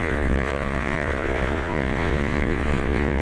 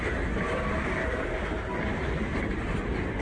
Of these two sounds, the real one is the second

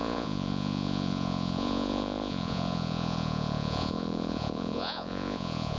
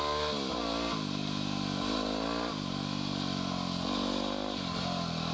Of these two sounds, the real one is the second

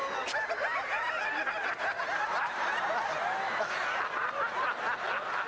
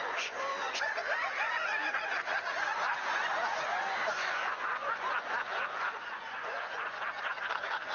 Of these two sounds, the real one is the first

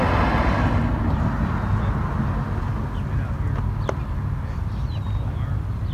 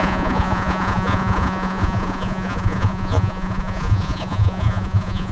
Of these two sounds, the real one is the first